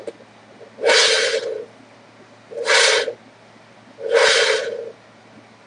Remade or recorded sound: recorded